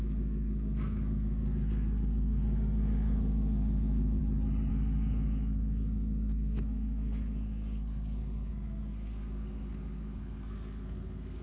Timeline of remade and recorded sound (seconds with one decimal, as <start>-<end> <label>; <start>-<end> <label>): 0.0-4.2 remade; 4.2-4.7 recorded; 4.7-11.4 remade